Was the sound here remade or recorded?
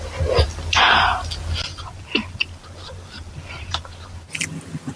recorded